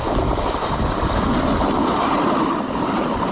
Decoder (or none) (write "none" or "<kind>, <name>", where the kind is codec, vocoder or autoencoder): none